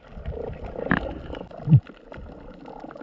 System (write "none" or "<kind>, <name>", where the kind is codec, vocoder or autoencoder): none